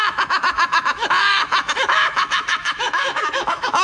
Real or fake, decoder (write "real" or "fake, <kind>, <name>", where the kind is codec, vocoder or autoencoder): fake, autoencoder, DAC-VAE